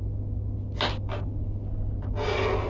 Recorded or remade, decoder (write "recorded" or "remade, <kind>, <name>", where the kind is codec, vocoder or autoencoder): recorded